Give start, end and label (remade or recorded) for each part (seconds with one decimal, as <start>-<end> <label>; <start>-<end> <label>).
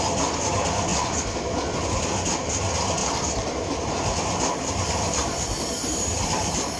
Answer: 0.0-0.9 recorded; 0.9-1.5 remade; 1.5-3.0 recorded; 3.0-6.8 remade